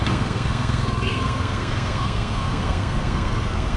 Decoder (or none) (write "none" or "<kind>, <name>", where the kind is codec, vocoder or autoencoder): codec, SNAC